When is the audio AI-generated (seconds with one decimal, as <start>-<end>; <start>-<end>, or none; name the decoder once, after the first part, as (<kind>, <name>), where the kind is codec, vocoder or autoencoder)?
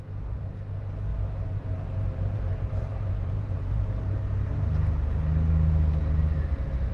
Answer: 1.1-3.9 (vocoder, BigVGAN v2)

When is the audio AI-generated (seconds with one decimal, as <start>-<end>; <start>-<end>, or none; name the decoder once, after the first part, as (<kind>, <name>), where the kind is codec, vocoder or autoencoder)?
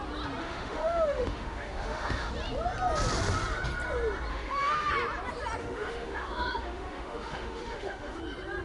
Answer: 0.4-2.3 (autoencoder, DAC-VAE); 4.3-4.9; 5.6-8.2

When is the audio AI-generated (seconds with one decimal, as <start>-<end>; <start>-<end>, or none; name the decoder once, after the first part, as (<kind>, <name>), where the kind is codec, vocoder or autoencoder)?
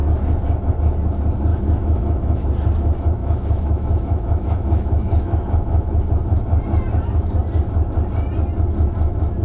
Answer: 1.5-2.5 (autoencoder, DAC-VAE); 3.2-6.1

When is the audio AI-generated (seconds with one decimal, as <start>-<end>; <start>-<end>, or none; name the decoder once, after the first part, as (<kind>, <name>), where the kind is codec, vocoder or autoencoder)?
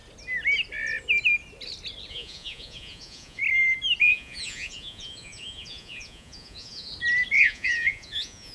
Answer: 2.1-3.4 (vocoder, Vocos); 4.0-6.9; 7.4-8.5